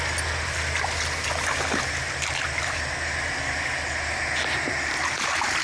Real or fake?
real